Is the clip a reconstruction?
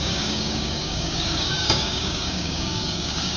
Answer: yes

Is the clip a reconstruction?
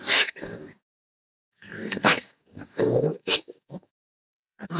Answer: yes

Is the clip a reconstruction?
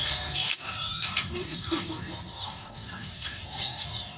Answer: yes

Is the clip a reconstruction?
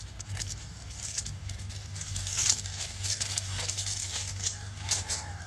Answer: yes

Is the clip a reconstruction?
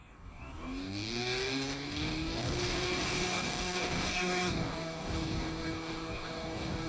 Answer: yes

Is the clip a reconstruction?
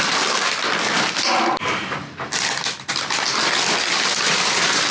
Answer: no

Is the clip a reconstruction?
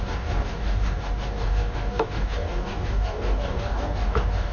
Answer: yes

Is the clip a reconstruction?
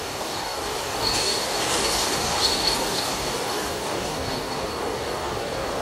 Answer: yes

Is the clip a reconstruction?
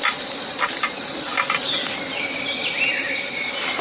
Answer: no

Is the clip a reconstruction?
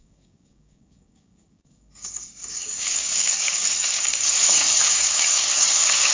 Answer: yes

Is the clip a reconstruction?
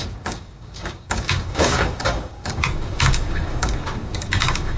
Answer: yes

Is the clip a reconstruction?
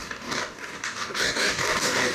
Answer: yes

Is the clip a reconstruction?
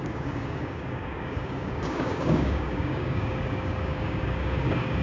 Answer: yes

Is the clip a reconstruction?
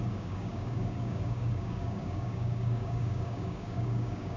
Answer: yes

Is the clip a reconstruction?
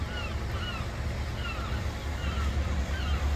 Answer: no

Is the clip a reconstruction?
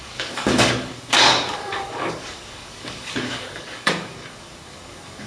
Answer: yes